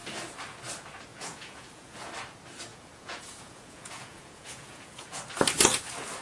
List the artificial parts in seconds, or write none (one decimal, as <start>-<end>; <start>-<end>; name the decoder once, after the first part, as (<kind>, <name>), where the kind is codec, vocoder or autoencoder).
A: 1.1-2.1 (vocoder, Vocos); 2.7-5.2